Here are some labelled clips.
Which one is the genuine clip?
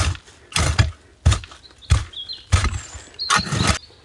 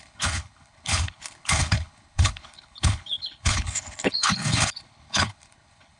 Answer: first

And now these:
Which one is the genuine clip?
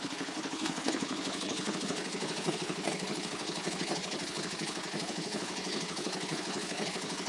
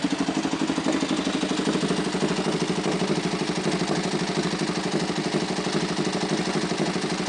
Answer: second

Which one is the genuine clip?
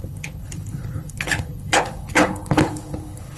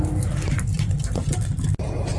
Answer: second